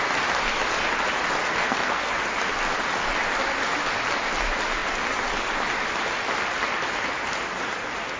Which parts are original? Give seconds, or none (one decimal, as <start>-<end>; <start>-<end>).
0.0-1.5; 2.1-8.2